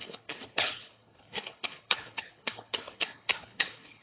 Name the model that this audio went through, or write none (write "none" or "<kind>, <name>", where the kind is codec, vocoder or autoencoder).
codec, HILCodec